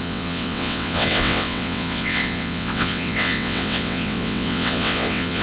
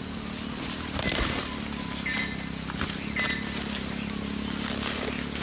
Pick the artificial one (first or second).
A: first